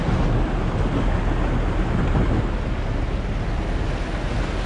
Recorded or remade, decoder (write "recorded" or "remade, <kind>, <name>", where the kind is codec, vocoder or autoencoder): recorded